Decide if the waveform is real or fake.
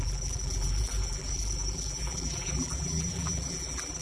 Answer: fake